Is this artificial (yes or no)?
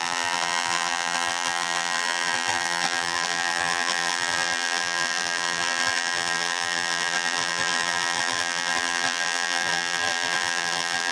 yes